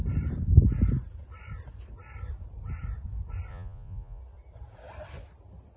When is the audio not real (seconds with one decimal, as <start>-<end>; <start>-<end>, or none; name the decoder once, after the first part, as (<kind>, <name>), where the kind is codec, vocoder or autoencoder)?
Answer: 3.5-4.2 (vocoder, Vocos)